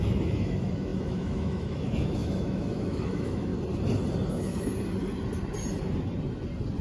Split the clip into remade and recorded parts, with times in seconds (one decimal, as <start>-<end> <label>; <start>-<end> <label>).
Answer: 0.0-3.5 remade; 3.5-4.3 recorded; 4.3-4.7 remade; 4.7-6.8 recorded